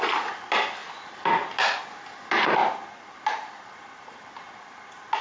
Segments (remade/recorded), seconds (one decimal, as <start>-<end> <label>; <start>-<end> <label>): 0.0-5.2 recorded

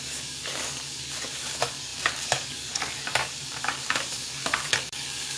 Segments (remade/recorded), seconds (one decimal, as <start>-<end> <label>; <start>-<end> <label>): 0.0-5.4 remade